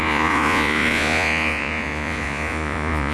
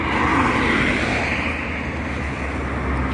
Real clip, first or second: second